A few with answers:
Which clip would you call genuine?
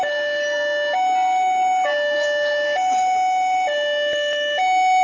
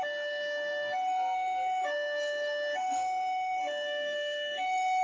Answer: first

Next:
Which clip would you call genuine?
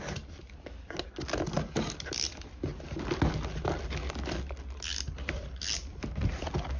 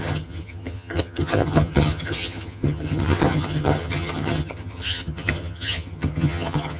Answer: first